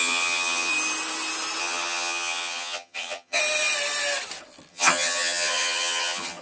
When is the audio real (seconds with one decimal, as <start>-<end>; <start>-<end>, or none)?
0.7-1.6; 3.4-4.7